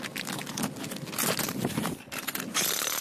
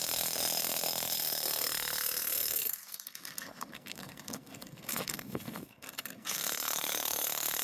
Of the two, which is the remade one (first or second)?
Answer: second